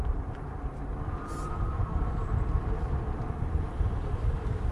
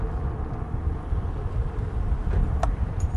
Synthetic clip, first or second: first